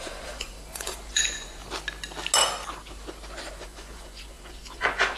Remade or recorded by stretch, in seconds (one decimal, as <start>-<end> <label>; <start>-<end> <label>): 0.0-1.6 remade; 1.6-3.5 recorded; 3.5-5.2 remade